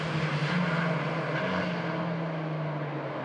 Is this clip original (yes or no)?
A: yes